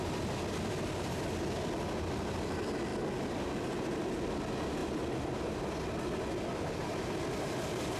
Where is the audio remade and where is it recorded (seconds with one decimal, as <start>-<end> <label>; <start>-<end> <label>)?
0.0-8.0 recorded